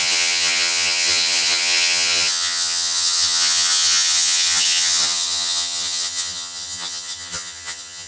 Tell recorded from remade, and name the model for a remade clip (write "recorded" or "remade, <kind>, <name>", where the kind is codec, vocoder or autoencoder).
remade, vocoder, HiFi-GAN